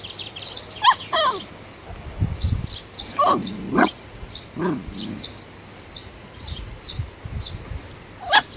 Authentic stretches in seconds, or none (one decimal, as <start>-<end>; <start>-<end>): 0.0-3.4; 4.3-6.0; 6.8-8.6